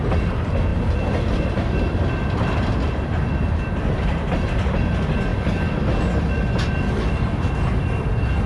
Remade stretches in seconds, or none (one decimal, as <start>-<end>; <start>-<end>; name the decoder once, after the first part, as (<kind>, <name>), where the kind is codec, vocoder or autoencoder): none